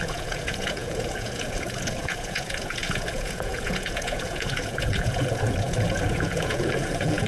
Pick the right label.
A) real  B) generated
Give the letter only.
B